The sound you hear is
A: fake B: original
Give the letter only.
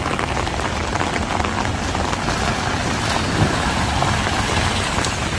B